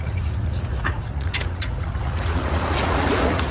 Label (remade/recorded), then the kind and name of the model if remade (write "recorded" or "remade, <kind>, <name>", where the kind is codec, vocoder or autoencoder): remade, vocoder, Vocos